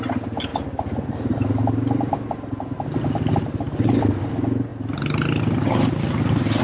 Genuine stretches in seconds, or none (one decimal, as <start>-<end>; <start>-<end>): 0.0-6.6